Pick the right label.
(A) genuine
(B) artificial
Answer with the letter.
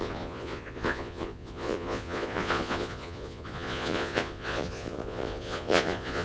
B